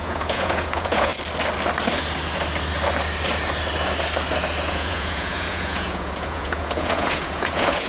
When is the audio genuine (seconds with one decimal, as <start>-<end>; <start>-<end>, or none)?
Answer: 1.1-4.7